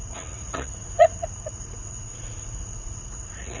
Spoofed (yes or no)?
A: yes